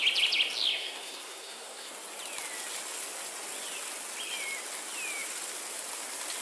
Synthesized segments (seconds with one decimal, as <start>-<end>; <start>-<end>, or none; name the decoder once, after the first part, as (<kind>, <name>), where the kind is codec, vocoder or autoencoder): 0.7-1.9 (codec, SNAC)